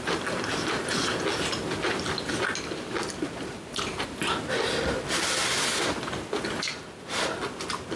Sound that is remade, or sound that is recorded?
recorded